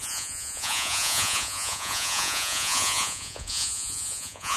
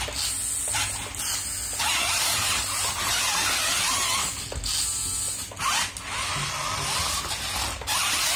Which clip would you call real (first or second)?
second